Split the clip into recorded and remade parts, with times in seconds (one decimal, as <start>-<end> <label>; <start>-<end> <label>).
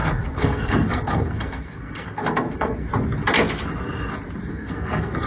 0.0-2.9 remade; 2.9-4.5 recorded; 4.5-5.3 remade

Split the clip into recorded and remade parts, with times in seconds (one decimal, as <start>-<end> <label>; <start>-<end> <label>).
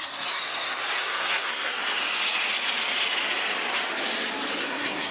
0.0-0.4 remade; 0.4-1.0 recorded; 1.0-1.8 remade; 1.8-4.6 recorded; 4.6-5.1 remade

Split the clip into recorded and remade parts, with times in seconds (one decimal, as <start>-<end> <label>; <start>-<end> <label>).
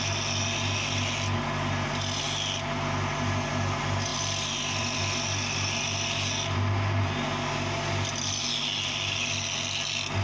0.0-4.1 recorded; 4.1-5.0 remade; 5.0-10.2 recorded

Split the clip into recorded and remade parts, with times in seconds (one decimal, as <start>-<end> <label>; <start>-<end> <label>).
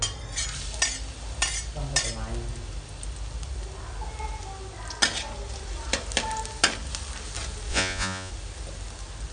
0.0-7.7 recorded; 7.7-8.3 remade; 8.3-9.3 recorded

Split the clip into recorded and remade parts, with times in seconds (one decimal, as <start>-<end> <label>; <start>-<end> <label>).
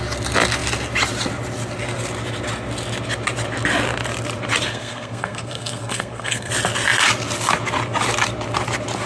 0.0-4.7 recorded; 4.7-6.5 remade; 6.5-9.1 recorded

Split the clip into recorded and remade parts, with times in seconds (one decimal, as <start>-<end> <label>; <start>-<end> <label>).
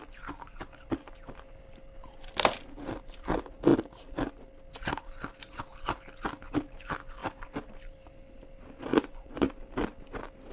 0.0-8.9 recorded; 8.9-9.5 remade; 9.5-10.5 recorded